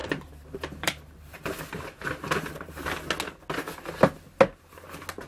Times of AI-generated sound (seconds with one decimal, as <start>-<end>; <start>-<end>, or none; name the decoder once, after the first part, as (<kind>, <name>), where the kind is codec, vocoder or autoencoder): 0.0-2.7 (vocoder, BigVGAN v2)